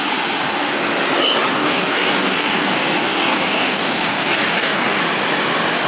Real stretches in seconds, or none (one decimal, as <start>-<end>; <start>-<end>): 0.0-0.4; 0.9-1.5; 5.0-5.9

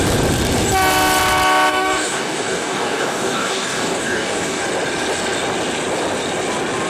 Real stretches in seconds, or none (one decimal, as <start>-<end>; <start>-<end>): 0.0-1.7; 4.6-6.9